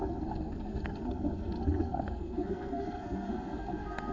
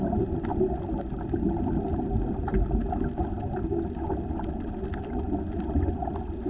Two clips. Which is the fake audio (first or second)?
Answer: first